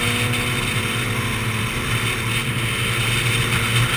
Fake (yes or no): no